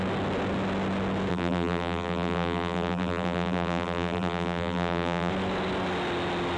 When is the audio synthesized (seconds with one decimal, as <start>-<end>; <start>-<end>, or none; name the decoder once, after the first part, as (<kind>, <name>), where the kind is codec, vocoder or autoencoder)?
1.3-5.3 (vocoder, BigVGAN v2)